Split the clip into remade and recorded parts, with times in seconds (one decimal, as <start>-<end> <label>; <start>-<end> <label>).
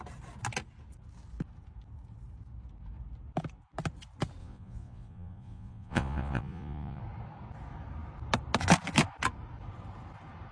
0.0-4.4 recorded; 4.4-7.0 remade; 7.0-10.5 recorded